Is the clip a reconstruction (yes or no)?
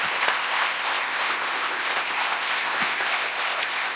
yes